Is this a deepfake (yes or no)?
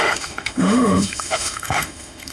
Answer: yes